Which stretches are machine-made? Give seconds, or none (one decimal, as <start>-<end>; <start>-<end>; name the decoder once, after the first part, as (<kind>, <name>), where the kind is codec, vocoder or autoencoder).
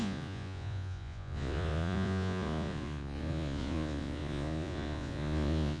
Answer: 0.0-5.8 (vocoder, Vocos)